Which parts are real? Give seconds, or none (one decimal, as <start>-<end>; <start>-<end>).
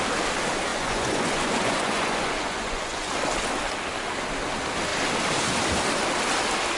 0.0-0.7; 3.1-6.8